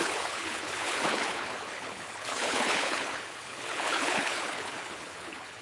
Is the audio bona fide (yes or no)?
no